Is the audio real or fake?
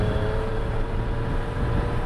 fake